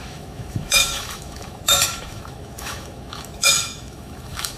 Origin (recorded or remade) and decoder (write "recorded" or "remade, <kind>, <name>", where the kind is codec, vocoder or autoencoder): remade, autoencoder, DAC-VAE